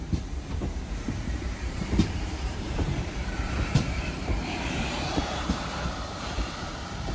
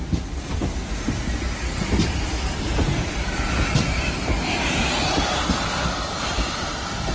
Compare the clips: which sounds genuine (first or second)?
second